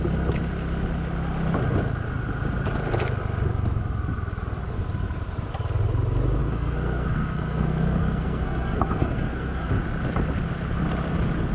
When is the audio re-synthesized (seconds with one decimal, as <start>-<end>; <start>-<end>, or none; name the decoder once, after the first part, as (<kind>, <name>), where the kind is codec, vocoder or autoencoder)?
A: 6.4-9.7 (codec, SNAC)